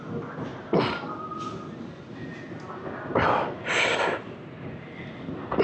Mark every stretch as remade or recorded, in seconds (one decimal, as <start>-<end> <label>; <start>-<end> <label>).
0.0-5.6 recorded